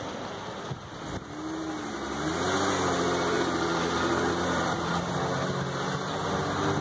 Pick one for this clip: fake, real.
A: real